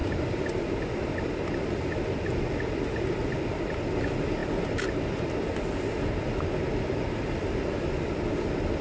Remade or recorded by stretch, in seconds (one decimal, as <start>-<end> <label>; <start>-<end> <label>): 0.0-8.8 recorded